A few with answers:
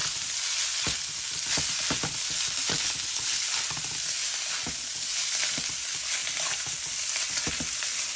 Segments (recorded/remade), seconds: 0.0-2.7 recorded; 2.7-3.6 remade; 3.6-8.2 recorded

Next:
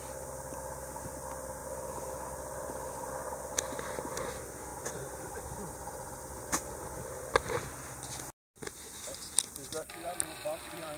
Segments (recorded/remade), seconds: 0.0-1.6 remade; 1.6-2.9 recorded; 2.9-4.7 remade; 4.7-9.9 recorded; 9.9-11.0 remade